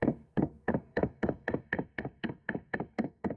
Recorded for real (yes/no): no